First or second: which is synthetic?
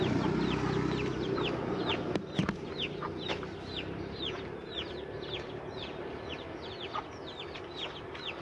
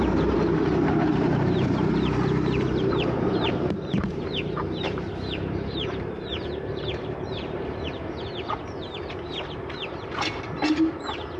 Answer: second